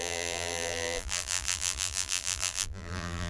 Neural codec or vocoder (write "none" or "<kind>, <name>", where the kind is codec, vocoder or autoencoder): vocoder, BigVGAN v2